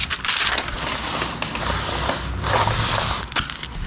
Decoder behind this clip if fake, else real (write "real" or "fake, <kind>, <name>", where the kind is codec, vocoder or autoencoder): real